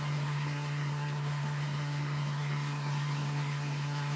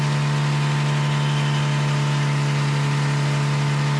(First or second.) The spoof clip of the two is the first